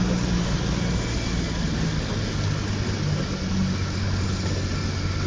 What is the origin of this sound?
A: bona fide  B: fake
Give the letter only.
A